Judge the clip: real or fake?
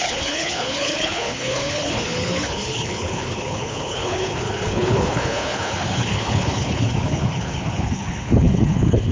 fake